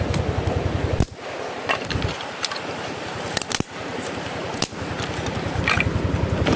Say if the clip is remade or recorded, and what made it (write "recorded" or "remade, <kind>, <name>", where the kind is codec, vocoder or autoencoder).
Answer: recorded